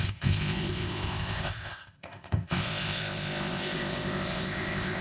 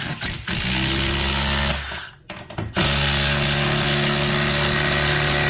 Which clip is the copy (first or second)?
first